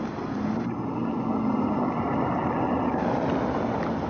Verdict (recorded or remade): recorded